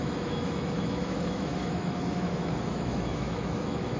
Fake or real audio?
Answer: fake